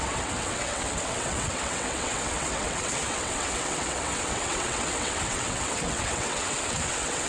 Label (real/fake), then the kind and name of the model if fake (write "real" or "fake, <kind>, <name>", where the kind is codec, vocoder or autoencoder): fake, vocoder, WaveNeXt